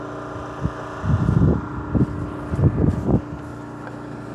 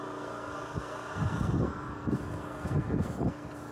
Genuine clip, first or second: first